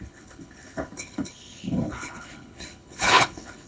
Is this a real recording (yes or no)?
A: no